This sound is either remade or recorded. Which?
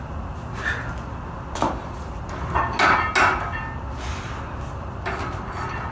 recorded